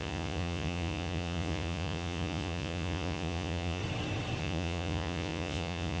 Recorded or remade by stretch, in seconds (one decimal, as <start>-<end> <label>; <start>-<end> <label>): 0.0-3.8 remade; 3.8-4.4 recorded; 4.4-6.0 remade